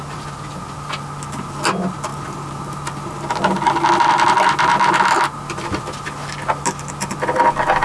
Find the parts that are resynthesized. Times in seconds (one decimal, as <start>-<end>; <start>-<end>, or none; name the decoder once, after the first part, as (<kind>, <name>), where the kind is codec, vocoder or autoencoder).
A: none